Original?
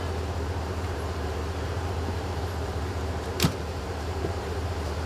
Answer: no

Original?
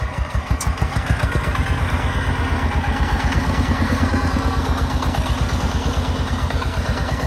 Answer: no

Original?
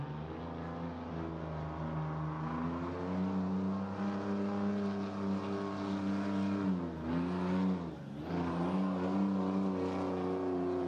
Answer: yes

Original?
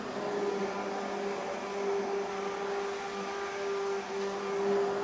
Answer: yes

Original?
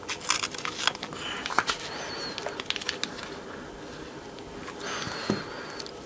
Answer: yes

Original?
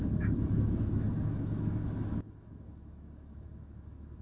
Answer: no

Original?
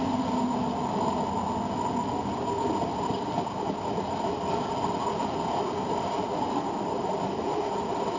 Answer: yes